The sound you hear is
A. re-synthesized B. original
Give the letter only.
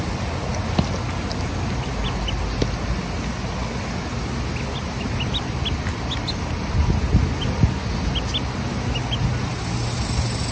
B